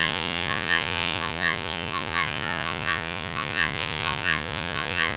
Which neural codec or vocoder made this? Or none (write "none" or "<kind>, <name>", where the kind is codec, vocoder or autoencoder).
vocoder, Vocos